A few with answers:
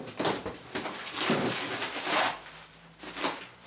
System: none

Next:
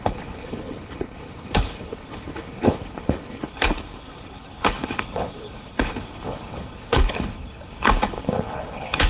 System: codec, HILCodec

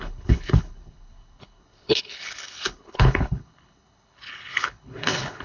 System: codec, HILCodec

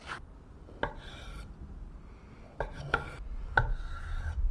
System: none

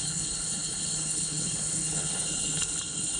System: codec, HILCodec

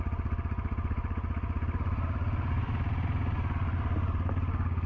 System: none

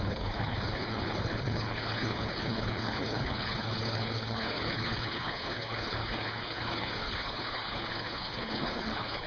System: codec, HILCodec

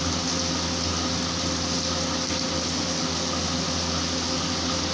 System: none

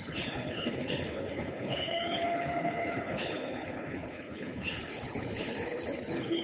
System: codec, HILCodec